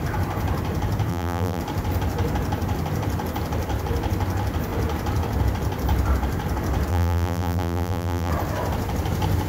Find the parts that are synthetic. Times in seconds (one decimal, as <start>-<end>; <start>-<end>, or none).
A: 1.1-1.6; 6.9-8.3